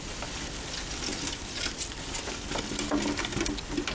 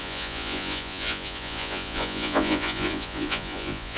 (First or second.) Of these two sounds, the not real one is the second